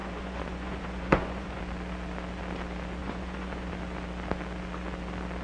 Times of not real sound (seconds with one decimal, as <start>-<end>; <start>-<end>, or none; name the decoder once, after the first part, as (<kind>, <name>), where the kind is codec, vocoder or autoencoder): 0.0-1.6 (vocoder, Vocos); 3.0-3.7